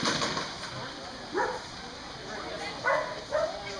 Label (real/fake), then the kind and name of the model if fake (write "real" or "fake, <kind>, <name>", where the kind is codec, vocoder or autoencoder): real